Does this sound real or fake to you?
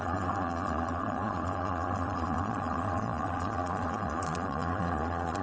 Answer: fake